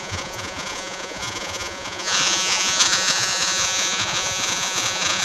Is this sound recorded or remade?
remade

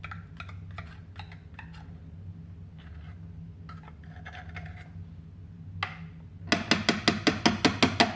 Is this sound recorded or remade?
recorded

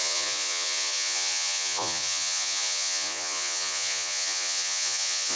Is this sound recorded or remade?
remade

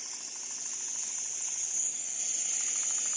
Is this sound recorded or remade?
recorded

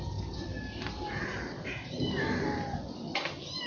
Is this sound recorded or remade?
recorded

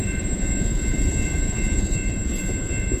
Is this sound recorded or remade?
remade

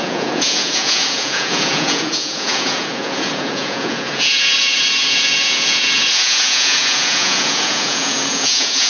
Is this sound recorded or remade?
remade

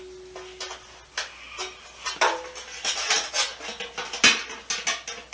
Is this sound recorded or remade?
recorded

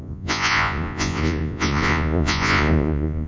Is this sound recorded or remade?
remade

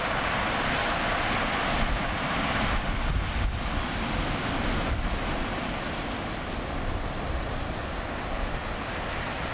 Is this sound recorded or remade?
recorded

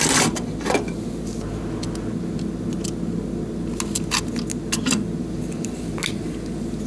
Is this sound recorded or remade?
recorded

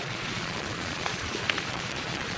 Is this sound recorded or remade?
remade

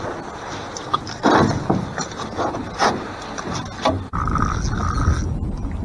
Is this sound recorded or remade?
recorded